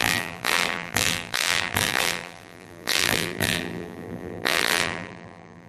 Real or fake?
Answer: fake